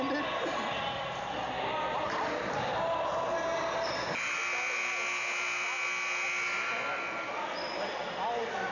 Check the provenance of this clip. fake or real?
real